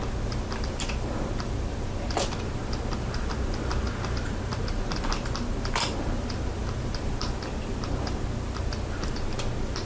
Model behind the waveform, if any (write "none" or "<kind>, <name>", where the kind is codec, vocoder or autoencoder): none